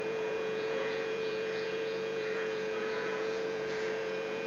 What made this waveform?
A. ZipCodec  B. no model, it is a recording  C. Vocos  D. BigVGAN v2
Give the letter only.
C